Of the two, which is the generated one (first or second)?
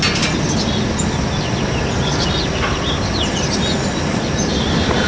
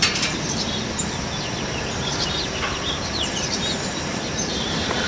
second